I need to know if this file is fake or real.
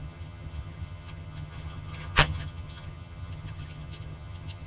fake